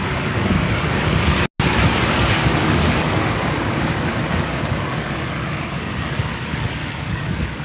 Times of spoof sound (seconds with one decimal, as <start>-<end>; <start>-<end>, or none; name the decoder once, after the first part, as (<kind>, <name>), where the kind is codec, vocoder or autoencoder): 0.0-1.3 (codec, DAC); 2.1-7.6